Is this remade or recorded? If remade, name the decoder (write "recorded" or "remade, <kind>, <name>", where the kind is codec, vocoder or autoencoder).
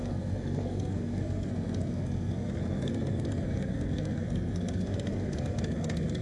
remade, codec, SNAC